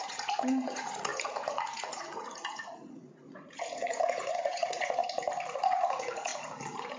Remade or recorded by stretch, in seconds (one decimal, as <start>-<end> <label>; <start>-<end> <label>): 0.0-5.0 remade; 5.0-5.6 recorded; 5.6-6.3 remade; 6.3-7.0 recorded